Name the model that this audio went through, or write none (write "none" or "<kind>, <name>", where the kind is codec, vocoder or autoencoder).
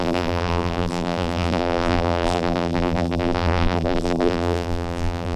vocoder, BigVGAN v2